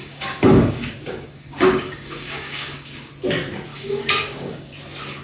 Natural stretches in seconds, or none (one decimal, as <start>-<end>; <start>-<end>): 3.1-3.7; 4.7-5.2